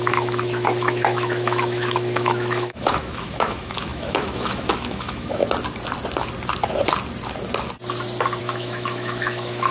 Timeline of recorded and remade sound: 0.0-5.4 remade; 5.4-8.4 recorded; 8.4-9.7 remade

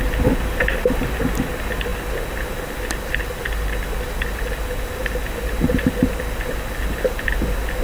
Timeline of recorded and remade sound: 0.0-7.8 recorded

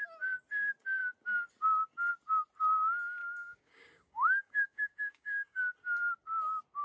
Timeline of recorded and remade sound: 0.0-3.2 recorded; 3.2-5.6 remade; 5.6-6.8 recorded

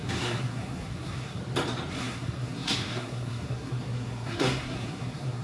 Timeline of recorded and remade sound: 0.0-1.4 remade; 1.4-1.9 recorded; 1.9-5.4 remade

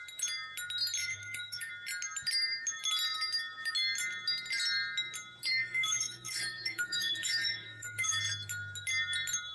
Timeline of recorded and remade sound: 0.0-1.0 recorded; 1.0-1.7 remade; 1.7-5.5 recorded; 5.5-8.2 remade; 8.2-9.5 recorded